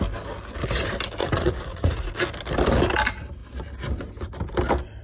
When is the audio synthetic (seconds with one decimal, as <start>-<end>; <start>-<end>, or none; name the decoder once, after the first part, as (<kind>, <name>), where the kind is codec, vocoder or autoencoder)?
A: 1.2-2.1 (vocoder, Vocos)